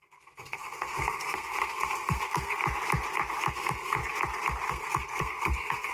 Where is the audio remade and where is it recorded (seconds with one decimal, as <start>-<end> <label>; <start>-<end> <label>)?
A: 0.0-2.6 remade; 2.6-3.5 recorded; 3.5-4.0 remade; 4.0-4.7 recorded; 4.7-5.9 remade